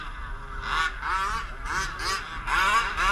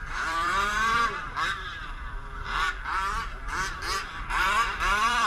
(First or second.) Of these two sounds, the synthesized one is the second